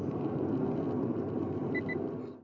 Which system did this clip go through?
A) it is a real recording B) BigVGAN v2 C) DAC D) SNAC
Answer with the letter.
A